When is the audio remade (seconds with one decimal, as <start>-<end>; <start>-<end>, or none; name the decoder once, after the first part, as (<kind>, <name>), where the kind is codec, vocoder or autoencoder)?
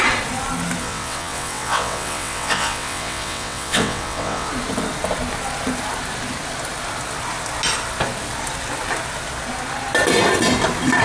0.8-4.5 (vocoder, WaveNeXt)